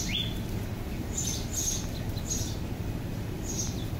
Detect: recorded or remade recorded